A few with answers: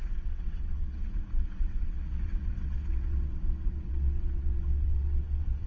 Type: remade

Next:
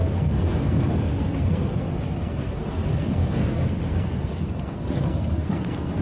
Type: remade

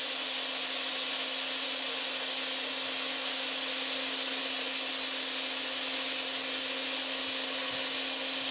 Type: recorded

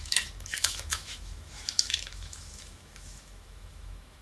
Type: remade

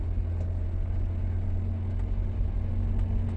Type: recorded